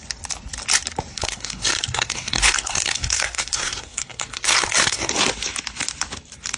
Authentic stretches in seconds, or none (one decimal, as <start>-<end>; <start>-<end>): 0.0-1.1; 5.1-6.6

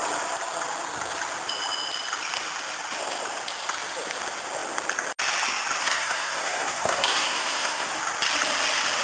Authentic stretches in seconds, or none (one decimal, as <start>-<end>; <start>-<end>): 0.0-5.8; 7.9-9.0